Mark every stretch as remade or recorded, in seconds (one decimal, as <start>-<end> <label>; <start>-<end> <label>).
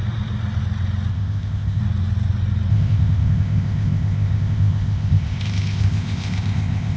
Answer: 0.0-1.1 recorded; 1.1-1.8 remade; 1.8-2.7 recorded; 2.7-7.0 remade